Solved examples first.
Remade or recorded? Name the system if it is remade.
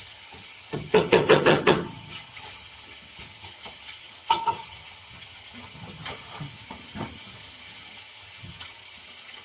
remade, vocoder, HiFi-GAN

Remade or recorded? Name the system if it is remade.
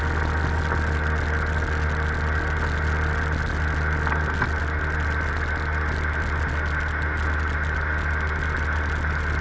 recorded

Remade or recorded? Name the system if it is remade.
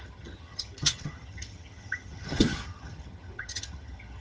remade, vocoder, HiFi-GAN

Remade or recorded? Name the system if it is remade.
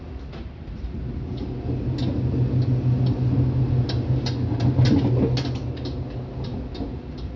recorded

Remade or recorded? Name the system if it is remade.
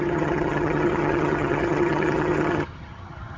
remade, vocoder, HiFi-GAN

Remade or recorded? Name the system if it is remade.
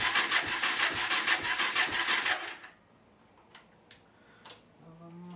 recorded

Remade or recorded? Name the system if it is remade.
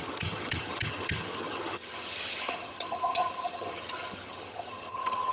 remade, vocoder, HiFi-GAN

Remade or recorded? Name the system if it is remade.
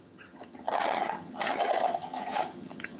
remade, vocoder, HiFi-GAN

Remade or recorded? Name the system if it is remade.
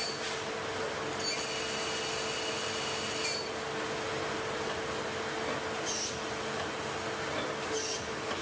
recorded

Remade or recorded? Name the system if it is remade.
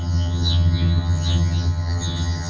remade, vocoder, HiFi-GAN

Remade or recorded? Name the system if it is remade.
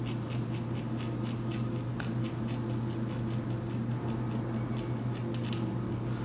recorded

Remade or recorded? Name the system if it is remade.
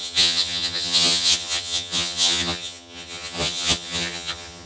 remade, vocoder, HiFi-GAN